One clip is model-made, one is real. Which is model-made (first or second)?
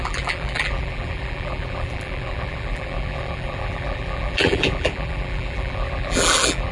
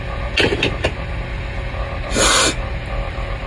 first